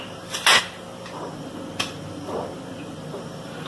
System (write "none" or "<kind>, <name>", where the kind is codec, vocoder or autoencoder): none